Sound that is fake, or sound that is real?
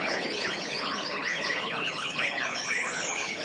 fake